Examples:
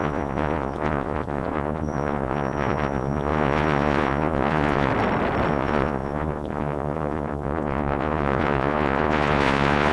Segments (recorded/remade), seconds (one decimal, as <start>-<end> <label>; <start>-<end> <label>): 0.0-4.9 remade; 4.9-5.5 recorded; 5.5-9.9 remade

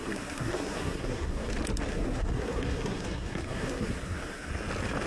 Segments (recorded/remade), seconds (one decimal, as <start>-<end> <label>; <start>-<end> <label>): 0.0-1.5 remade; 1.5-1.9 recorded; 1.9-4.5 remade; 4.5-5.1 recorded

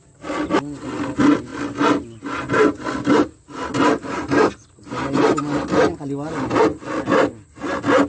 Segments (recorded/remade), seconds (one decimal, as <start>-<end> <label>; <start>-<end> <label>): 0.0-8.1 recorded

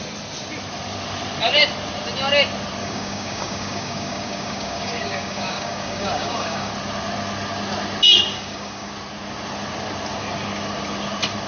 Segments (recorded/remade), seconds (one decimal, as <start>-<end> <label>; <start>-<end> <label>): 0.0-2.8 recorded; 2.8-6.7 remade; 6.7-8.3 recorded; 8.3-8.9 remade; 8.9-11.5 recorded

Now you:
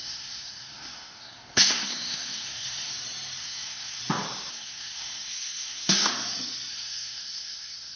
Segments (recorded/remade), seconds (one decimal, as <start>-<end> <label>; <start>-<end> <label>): 0.0-2.9 remade; 2.9-3.4 recorded; 3.4-4.0 remade; 4.0-4.5 recorded; 4.5-6.1 remade; 6.1-6.7 recorded; 6.7-8.0 remade

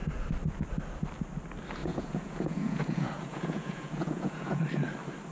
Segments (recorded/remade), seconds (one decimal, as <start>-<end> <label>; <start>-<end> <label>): 0.0-1.8 recorded; 1.8-4.6 remade; 4.6-5.3 recorded